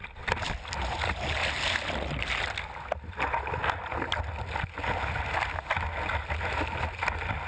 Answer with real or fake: real